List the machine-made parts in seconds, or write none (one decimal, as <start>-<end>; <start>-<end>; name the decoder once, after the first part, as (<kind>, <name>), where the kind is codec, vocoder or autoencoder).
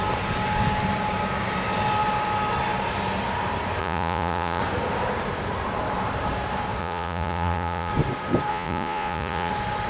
3.8-4.6 (vocoder, Vocos); 6.8-7.9; 8.5-9.5